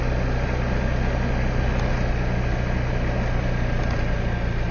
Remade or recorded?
recorded